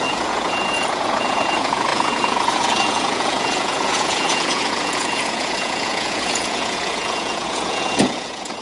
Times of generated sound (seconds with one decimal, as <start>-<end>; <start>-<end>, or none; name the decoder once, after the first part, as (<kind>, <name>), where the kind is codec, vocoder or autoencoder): 0.0-8.6 (vocoder, Vocos)